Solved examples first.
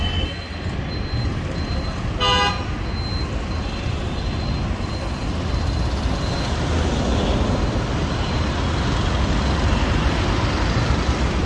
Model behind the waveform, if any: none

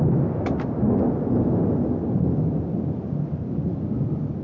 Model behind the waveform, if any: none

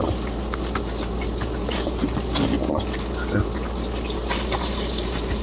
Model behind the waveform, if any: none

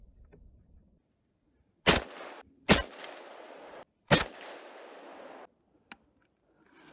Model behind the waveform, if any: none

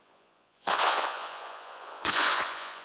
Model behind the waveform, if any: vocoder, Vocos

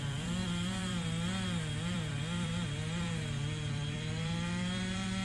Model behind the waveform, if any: vocoder, BigVGAN v2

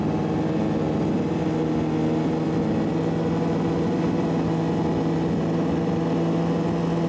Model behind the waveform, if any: none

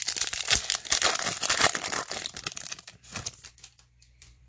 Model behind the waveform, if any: vocoder, BigVGAN v2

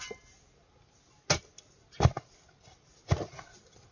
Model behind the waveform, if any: none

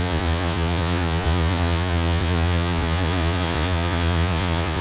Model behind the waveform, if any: vocoder, Vocos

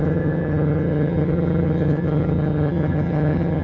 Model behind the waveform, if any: vocoder, HiFi-GAN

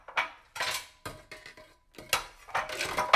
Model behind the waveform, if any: none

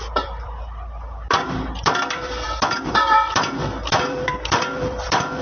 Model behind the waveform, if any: vocoder, BigVGAN v2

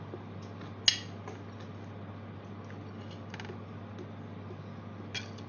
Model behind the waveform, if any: none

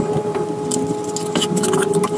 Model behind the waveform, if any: none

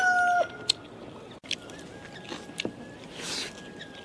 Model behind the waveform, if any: none